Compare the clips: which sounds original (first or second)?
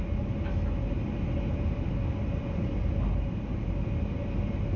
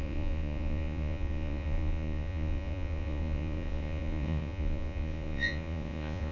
first